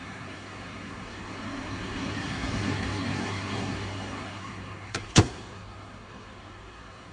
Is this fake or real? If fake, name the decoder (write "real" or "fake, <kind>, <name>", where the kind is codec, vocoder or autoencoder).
fake, codec, SNAC